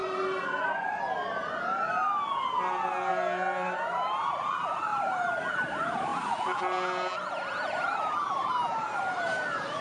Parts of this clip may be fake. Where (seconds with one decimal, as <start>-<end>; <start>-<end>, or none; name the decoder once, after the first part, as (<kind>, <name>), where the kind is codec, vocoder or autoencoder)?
0.0-1.0 (vocoder, Vocos)